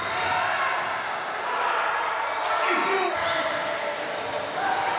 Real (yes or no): yes